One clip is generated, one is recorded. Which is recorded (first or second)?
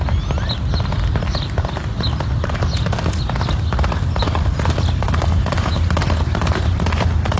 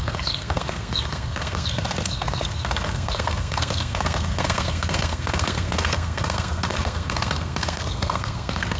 first